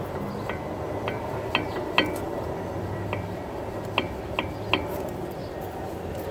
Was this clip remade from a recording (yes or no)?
no